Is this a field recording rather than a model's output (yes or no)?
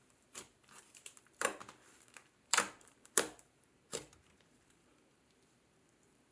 no